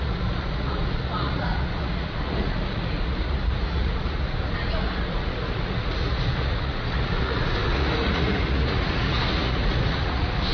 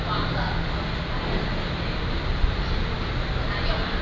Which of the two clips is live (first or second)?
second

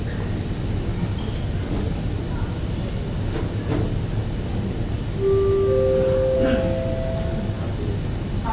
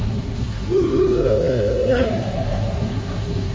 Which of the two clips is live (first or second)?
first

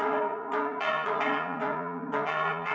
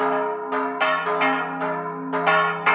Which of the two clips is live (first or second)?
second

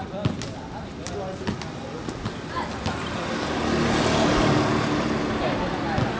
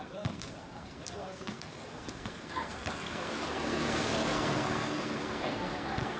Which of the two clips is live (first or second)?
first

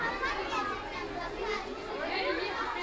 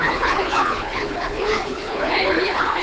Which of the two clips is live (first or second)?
first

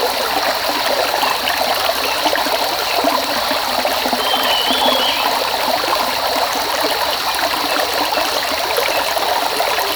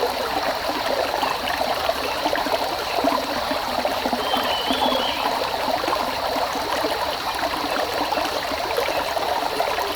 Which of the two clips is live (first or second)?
first